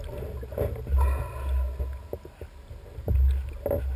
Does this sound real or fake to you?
real